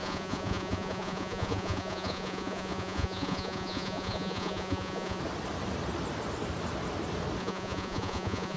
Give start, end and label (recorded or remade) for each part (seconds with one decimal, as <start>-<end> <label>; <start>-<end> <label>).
0.0-5.2 remade; 5.2-7.4 recorded; 7.4-8.6 remade

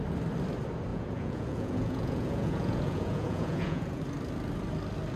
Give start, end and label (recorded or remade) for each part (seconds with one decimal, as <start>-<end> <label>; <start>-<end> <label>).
0.0-0.9 recorded; 0.9-4.0 remade; 4.0-5.2 recorded

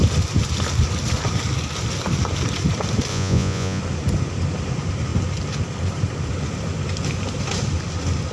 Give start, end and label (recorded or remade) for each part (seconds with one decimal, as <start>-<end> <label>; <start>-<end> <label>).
0.0-3.1 recorded; 3.1-3.8 remade; 3.8-8.3 recorded

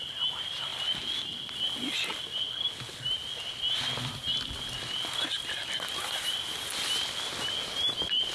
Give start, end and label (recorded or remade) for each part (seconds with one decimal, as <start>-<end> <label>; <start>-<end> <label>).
0.0-8.3 recorded

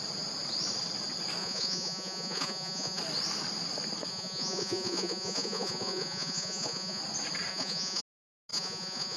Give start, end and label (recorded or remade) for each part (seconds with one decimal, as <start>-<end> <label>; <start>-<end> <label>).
0.0-1.4 recorded; 1.4-3.0 remade; 3.0-4.1 recorded; 4.1-7.0 remade; 7.0-7.5 recorded; 7.5-8.0 remade; 8.0-8.5 recorded; 8.5-9.2 remade

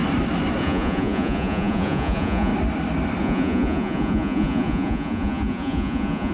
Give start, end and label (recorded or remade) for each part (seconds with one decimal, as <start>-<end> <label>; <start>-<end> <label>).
0.0-0.6 recorded; 0.6-2.5 remade; 2.5-3.2 recorded; 3.2-6.3 remade

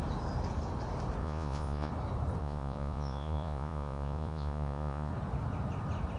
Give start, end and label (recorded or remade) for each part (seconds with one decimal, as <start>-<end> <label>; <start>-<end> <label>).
0.0-1.2 recorded; 1.2-1.9 remade; 1.9-2.4 recorded; 2.4-5.1 remade; 5.1-6.2 recorded

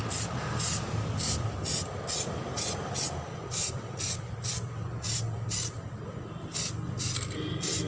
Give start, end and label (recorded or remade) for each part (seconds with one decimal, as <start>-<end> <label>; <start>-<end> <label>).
0.0-7.9 recorded